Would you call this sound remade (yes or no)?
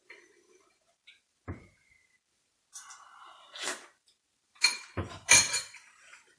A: yes